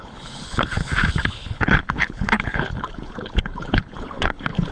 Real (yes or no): no